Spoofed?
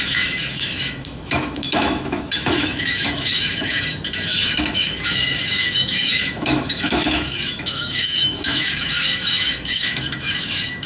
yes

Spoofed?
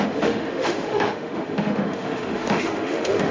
yes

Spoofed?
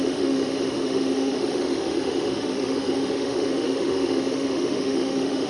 yes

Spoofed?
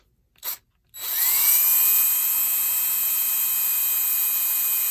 no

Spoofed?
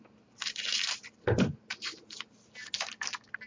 no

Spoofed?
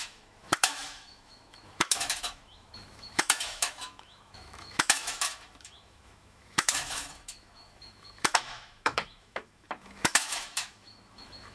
yes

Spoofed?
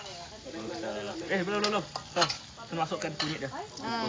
no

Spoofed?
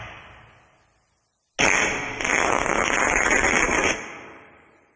no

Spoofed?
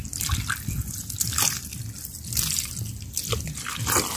no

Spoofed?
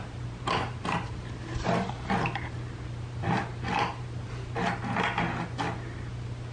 no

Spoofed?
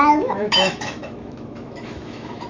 yes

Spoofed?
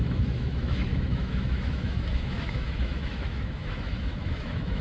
yes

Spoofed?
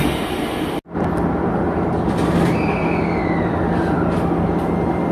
no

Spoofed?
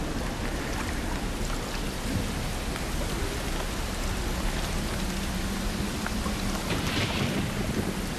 no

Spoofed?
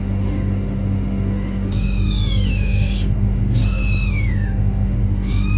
yes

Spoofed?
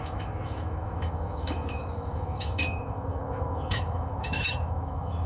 yes